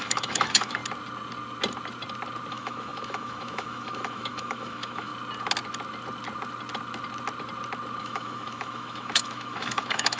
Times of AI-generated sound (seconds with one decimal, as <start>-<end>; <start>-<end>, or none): 0.0-0.8; 2.5-5.1; 8.0-10.2